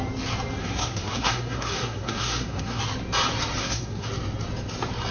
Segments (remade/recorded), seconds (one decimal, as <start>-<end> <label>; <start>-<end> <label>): 0.0-0.6 recorded; 0.6-2.8 remade; 2.8-3.6 recorded; 3.6-4.1 remade; 4.1-5.1 recorded